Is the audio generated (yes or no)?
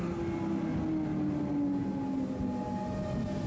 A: no